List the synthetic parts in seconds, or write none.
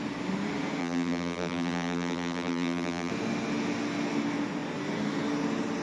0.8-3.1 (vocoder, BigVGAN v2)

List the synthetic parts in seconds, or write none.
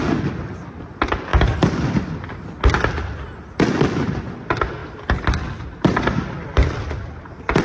1.3-2.2 (vocoder, BigVGAN v2); 4.8-7.6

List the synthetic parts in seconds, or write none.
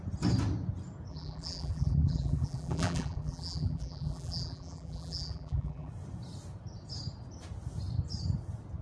1.1-5.9 (vocoder, BigVGAN v2)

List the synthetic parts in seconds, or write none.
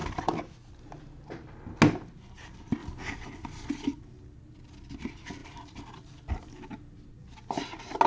2.8-3.7 (vocoder, BigVGAN v2); 5.4-7.1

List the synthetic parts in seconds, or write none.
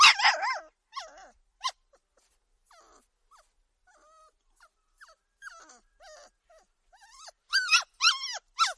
7.0-8.1 (vocoder, BigVGAN v2)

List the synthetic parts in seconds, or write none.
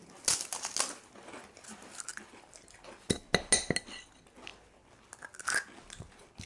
none